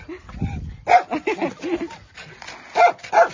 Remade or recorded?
recorded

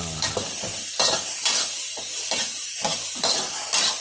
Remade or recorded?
recorded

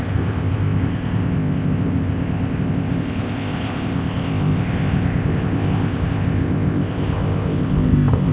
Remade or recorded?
remade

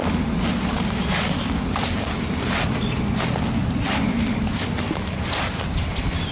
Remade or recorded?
recorded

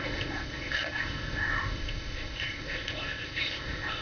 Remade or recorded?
remade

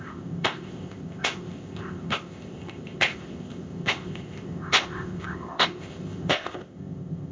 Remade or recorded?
remade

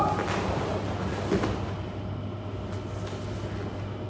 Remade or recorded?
recorded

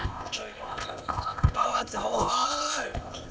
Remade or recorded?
remade